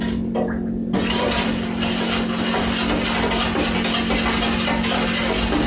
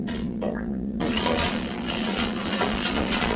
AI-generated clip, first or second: second